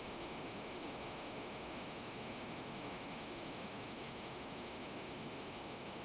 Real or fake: fake